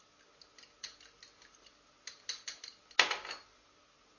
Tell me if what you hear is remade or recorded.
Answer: recorded